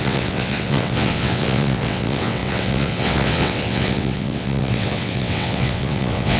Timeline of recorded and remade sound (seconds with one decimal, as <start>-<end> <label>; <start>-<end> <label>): 0.0-6.4 remade